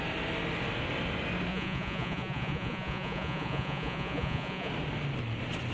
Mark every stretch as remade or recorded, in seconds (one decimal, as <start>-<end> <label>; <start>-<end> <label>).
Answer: 0.0-1.5 recorded; 1.5-4.7 remade; 4.7-5.7 recorded